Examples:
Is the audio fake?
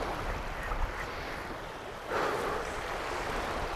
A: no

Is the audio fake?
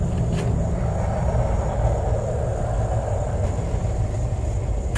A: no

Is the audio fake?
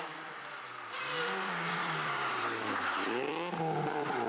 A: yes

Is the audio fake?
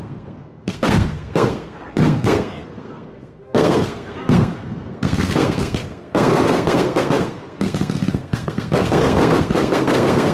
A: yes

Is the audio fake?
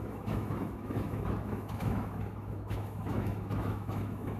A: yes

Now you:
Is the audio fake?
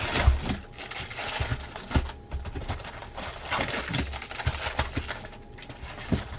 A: no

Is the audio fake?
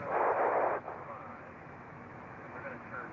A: yes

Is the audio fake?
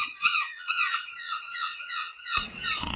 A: yes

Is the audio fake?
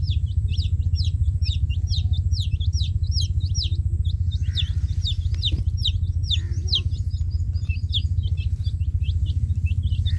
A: no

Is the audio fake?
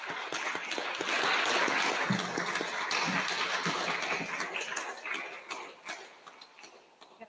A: no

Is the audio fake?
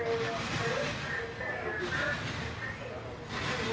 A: no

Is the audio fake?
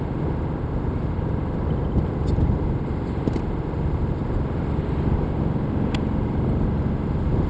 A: no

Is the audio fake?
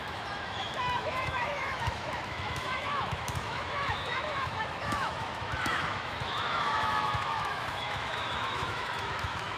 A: yes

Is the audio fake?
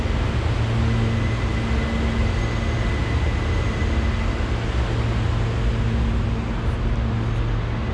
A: no